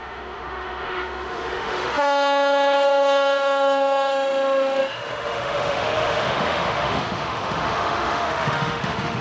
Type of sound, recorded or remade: remade